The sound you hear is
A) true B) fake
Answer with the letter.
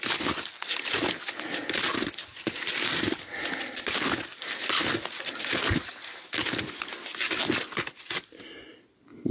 A